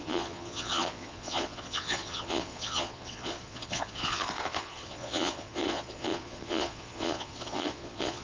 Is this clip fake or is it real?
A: fake